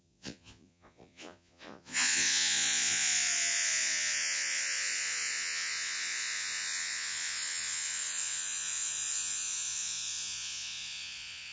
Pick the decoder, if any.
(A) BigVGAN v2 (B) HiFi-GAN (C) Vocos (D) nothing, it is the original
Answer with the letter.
C